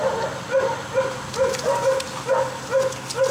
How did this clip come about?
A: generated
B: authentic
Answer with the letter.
B